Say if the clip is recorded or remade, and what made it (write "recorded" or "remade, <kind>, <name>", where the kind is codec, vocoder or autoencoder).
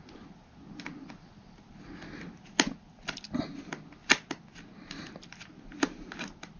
recorded